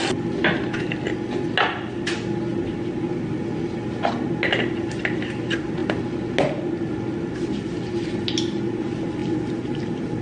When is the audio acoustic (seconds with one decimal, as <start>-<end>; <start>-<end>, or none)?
0.0-10.2

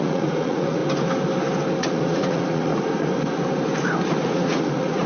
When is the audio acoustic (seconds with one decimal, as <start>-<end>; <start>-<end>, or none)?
0.8-1.8; 2.7-4.2

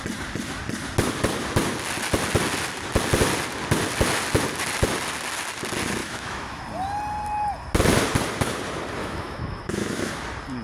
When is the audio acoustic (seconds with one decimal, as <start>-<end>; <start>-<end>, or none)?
0.0-6.0; 6.6-9.0; 10.1-10.6